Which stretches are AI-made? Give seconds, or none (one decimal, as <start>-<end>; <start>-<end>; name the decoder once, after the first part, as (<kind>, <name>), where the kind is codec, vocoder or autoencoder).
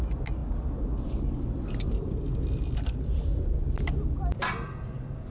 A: none